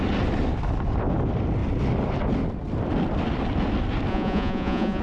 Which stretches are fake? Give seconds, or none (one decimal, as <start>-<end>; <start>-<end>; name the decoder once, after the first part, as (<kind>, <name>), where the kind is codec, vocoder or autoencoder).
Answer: 4.1-5.0 (vocoder, Vocos)